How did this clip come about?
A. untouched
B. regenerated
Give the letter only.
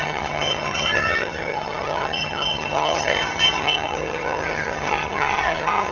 B